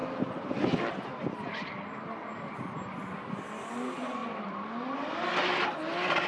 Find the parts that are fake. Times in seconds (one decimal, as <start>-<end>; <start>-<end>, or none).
none